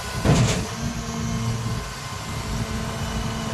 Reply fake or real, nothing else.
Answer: real